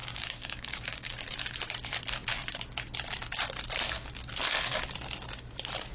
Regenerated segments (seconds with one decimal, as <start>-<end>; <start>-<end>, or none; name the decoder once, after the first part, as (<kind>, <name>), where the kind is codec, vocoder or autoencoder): 0.0-1.3 (codec, DAC)